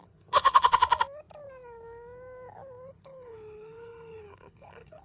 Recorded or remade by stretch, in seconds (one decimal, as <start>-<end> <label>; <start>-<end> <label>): 0.0-0.8 remade; 0.8-2.9 recorded; 2.9-5.0 remade